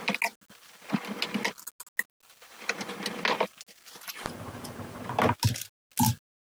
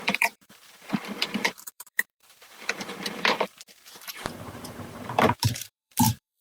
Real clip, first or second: first